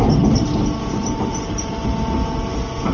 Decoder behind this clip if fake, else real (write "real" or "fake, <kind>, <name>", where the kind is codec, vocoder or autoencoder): real